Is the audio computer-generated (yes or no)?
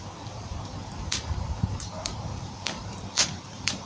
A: yes